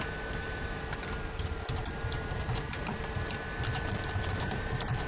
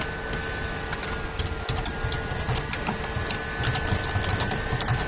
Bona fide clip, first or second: second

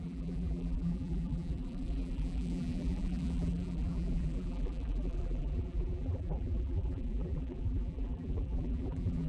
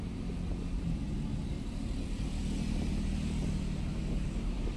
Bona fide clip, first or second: second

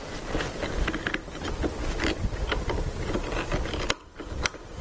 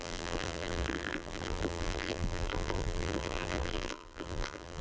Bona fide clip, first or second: first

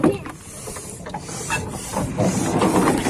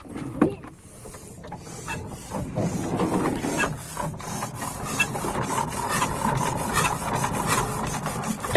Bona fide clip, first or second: second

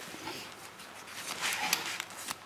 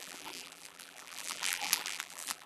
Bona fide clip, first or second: first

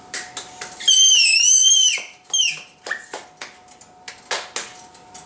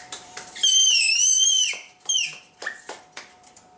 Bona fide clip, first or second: first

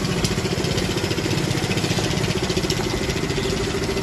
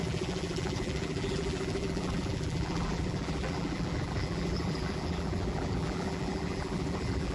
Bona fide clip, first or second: first